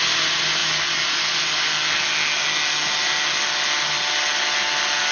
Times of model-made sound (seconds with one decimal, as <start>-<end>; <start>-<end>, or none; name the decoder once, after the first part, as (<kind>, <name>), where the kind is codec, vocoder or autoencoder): none